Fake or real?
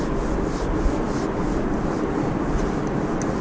real